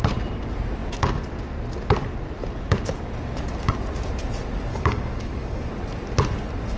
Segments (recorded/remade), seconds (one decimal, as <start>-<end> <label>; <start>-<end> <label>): 0.0-4.7 recorded; 4.7-5.7 remade; 5.7-6.8 recorded